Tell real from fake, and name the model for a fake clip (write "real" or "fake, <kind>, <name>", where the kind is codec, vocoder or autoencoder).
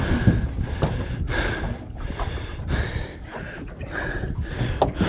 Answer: real